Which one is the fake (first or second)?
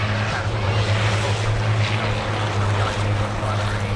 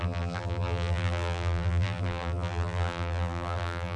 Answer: second